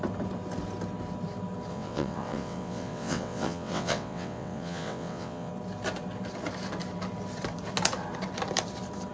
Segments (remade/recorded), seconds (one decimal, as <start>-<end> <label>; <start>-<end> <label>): 0.0-1.7 recorded; 1.7-5.5 remade; 5.5-9.1 recorded